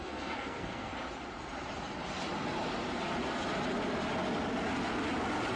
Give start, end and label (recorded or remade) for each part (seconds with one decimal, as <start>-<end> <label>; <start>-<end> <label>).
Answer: 0.0-0.9 remade; 0.9-5.6 recorded